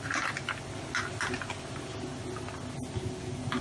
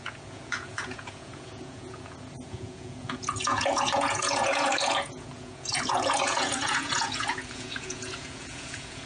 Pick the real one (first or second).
first